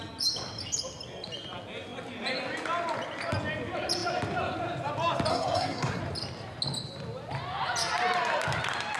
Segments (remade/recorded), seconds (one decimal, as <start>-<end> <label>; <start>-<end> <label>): 0.0-5.3 recorded; 5.3-6.0 remade; 6.0-9.0 recorded